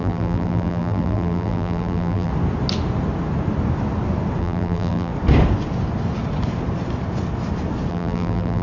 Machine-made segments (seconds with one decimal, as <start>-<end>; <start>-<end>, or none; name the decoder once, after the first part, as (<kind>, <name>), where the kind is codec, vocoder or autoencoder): 0.0-2.3 (vocoder, BigVGAN v2); 4.4-5.1; 7.9-8.6